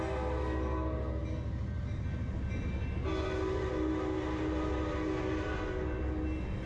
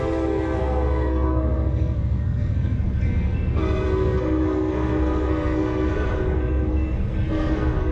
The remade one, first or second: second